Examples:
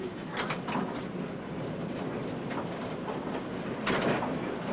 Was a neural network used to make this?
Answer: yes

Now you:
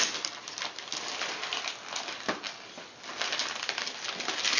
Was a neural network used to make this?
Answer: no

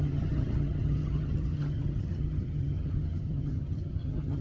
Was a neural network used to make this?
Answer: yes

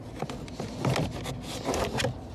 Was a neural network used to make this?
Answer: no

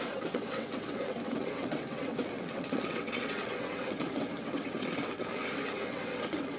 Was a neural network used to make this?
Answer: yes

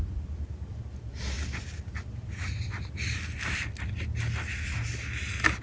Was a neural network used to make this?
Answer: no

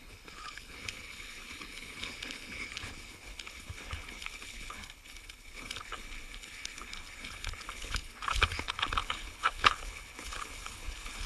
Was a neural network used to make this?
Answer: yes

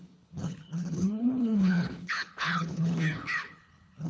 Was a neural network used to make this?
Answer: yes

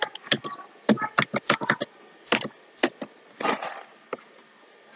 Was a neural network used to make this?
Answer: no